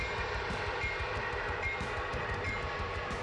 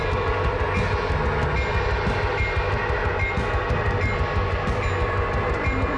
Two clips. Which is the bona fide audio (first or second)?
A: second